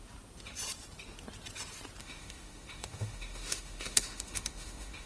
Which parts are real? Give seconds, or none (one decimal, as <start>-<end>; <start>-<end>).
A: 0.0-2.0